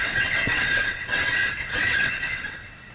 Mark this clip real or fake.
fake